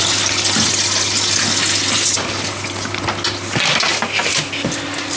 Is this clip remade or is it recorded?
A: recorded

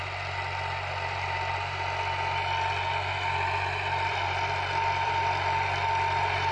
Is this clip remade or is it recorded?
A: remade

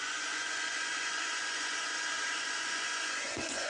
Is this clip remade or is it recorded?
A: remade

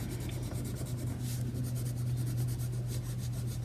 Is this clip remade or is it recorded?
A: recorded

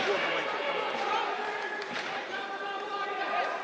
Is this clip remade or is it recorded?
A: remade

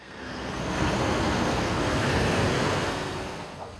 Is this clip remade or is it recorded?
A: remade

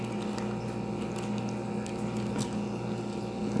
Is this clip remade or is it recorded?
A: recorded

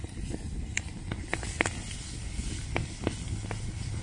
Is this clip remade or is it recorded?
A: recorded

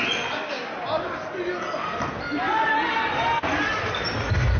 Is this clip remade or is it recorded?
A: recorded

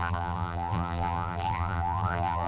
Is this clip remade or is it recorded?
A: remade